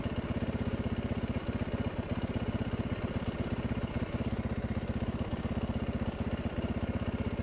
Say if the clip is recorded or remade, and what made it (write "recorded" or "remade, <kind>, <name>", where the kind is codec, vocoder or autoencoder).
recorded